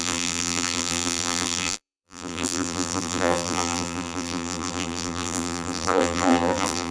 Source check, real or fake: fake